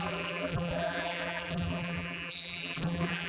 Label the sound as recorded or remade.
remade